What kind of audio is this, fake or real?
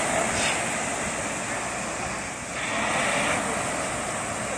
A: real